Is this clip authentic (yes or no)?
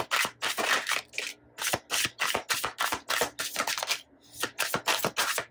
yes